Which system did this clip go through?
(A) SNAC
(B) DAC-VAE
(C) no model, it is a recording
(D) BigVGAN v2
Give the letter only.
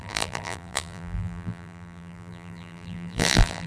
D